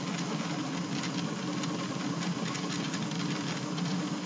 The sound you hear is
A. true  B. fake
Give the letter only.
A